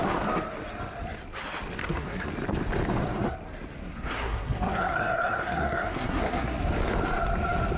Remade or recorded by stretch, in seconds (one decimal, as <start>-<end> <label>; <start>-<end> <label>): 0.0-1.8 recorded; 1.8-2.3 remade; 2.3-3.8 recorded; 3.8-6.7 remade; 6.7-7.8 recorded